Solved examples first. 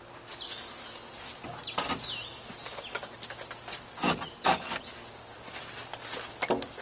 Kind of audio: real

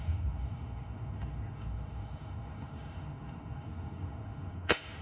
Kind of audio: fake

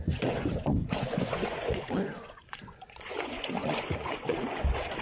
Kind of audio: fake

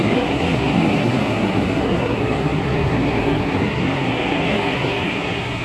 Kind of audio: fake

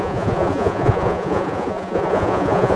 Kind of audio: fake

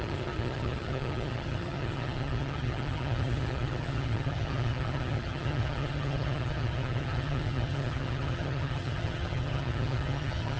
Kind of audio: fake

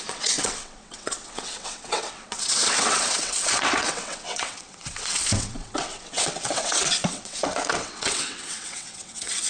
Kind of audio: fake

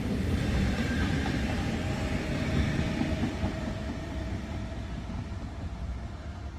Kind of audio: fake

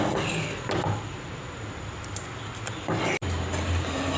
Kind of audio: real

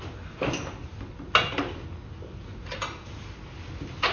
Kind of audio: real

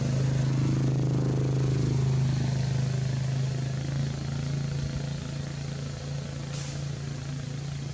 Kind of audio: real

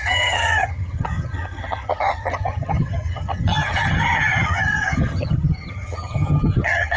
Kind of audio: fake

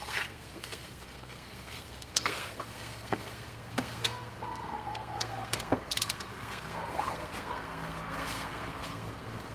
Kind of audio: fake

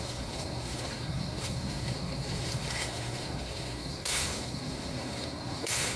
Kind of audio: fake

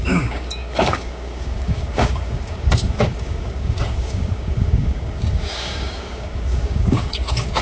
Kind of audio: fake